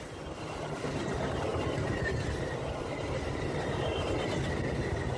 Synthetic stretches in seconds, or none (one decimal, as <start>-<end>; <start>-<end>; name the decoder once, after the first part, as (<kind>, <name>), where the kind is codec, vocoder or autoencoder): none